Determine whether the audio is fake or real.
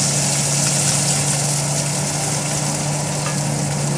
real